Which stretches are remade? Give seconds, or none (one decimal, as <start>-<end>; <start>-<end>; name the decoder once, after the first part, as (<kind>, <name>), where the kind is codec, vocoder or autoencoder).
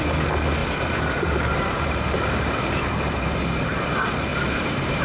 0.6-3.6 (vocoder, BigVGAN v2); 4.3-5.0